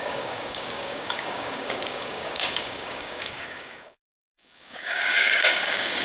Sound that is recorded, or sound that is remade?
remade